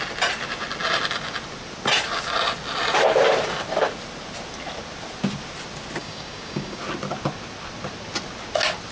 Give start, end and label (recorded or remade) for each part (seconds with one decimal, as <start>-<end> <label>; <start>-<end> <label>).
0.0-6.0 recorded; 6.0-6.8 remade; 6.8-8.9 recorded